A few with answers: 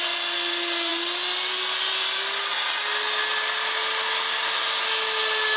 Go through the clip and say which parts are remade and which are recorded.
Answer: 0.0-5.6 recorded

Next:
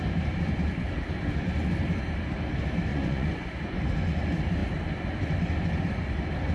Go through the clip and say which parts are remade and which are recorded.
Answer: 0.0-2.9 recorded; 2.9-3.8 remade; 3.8-6.5 recorded